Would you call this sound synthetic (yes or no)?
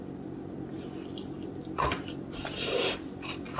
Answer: yes